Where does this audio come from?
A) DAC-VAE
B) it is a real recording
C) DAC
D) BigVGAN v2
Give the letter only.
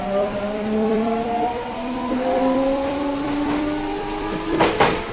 D